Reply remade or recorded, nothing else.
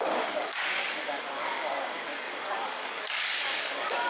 remade